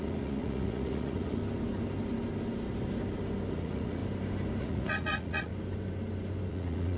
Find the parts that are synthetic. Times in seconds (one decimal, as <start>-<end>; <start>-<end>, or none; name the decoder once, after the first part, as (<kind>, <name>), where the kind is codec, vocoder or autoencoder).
0.0-1.4 (vocoder, Vocos); 3.5-4.0; 4.6-5.5; 6.5-7.0